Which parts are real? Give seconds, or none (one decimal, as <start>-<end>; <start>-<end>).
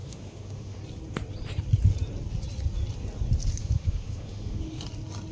0.8-3.6; 4.8-5.3